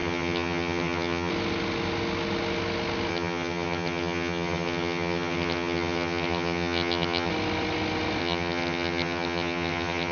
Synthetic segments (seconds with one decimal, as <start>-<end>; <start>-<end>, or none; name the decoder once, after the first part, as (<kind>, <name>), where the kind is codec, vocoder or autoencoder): 0.0-1.3 (vocoder, HiFi-GAN); 3.1-7.3; 8.2-10.1